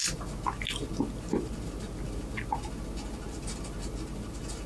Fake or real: real